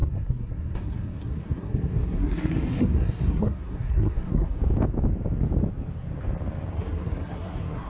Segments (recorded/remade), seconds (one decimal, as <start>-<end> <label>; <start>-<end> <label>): 0.0-4.6 remade; 4.6-6.8 recorded; 6.8-7.9 remade